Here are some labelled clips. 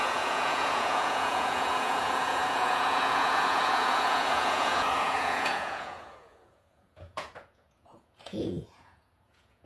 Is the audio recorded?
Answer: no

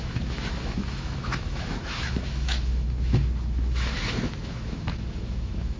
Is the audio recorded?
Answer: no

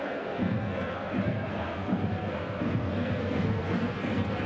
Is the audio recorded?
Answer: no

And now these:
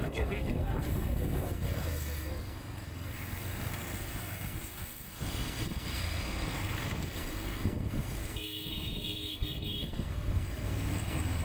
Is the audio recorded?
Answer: no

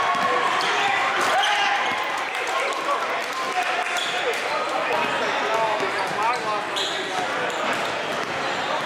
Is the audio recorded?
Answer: yes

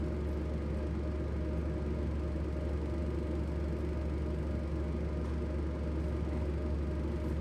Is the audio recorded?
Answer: yes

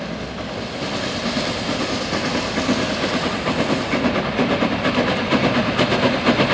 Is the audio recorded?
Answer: yes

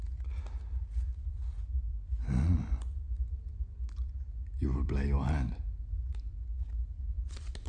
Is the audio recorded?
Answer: yes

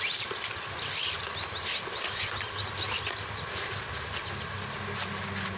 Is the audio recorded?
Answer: yes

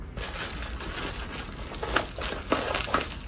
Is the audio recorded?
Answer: yes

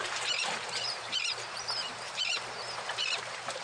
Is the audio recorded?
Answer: no